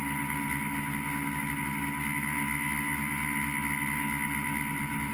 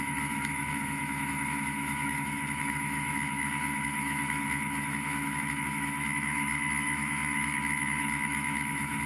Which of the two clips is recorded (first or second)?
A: first